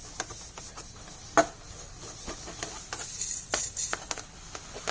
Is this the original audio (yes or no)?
yes